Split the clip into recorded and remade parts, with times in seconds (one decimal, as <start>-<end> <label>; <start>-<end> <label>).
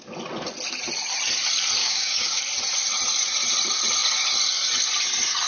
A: 0.0-1.8 recorded; 1.8-2.4 remade; 2.4-5.5 recorded